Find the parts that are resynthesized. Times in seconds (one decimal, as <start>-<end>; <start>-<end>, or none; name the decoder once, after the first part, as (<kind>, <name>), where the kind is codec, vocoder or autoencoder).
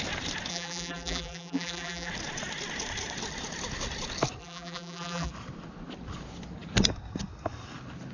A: 0.5-2.1 (vocoder, BigVGAN v2); 4.4-5.3